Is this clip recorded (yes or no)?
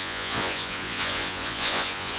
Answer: no